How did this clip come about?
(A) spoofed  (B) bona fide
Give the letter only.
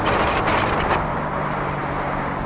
B